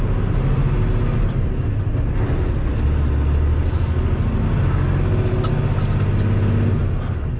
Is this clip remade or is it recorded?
recorded